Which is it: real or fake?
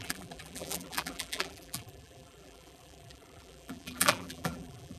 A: fake